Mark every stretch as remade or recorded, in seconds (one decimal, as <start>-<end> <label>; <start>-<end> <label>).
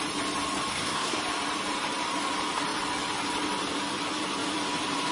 0.0-0.7 recorded; 0.7-1.2 remade; 1.2-5.1 recorded